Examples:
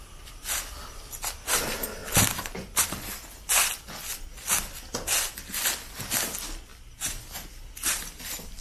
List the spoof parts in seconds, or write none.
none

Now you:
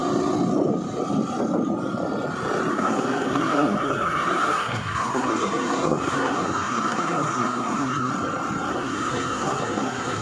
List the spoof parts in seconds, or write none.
2.7-8.1 (codec, SNAC); 8.7-10.2

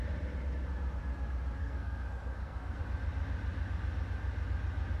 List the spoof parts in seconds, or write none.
1.6-2.8 (codec, SNAC)

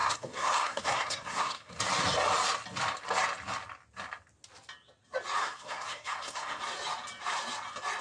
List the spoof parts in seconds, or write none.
0.0-1.8 (codec, SNAC); 5.4-6.6

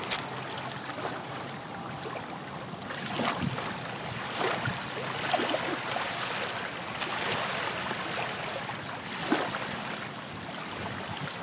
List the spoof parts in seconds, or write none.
none

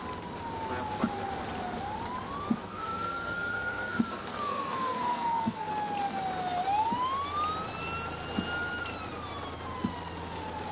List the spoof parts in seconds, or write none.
2.6-5.7 (codec, SNAC)